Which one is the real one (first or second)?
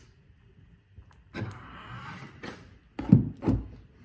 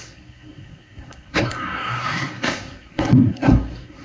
first